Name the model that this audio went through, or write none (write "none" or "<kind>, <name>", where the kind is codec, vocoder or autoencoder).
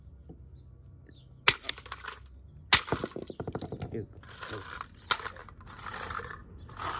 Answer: none